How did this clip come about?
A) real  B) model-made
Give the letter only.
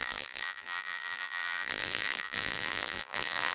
B